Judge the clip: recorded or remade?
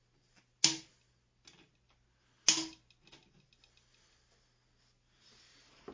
recorded